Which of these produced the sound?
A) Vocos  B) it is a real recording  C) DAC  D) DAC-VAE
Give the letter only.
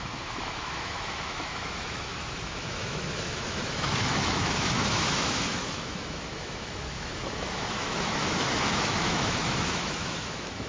D